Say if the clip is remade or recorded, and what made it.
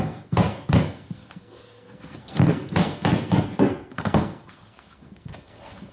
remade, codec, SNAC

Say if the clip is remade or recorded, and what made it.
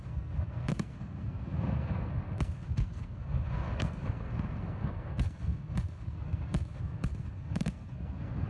remade, codec, SNAC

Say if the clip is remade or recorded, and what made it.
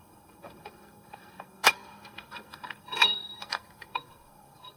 remade, codec, SNAC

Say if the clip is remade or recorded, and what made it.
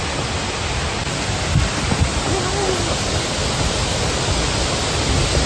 recorded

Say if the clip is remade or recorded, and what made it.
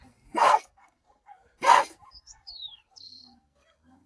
remade, codec, SNAC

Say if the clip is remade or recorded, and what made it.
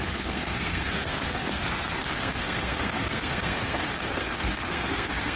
remade, codec, SNAC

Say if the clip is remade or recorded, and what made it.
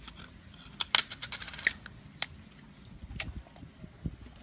recorded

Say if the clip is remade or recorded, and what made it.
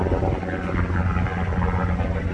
recorded